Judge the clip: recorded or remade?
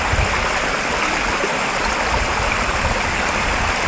recorded